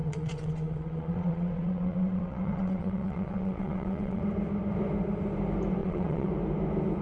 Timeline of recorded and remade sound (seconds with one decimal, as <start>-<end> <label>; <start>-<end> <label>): 0.0-4.2 remade; 4.2-5.8 recorded; 5.8-6.3 remade; 6.3-7.0 recorded

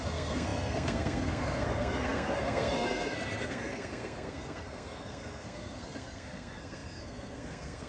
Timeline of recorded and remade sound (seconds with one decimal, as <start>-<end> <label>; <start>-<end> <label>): 0.0-7.9 remade

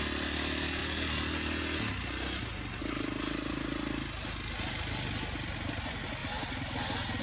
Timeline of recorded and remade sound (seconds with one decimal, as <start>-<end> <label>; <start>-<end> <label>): 0.0-7.2 recorded

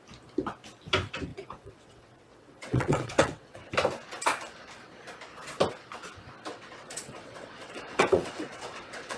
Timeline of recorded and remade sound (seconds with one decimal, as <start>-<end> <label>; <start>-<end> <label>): 0.0-1.3 recorded; 1.3-3.7 remade; 3.7-6.5 recorded; 6.5-9.2 remade